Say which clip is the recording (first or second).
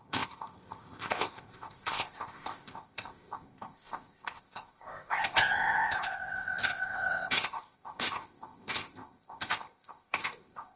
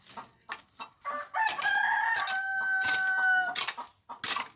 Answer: second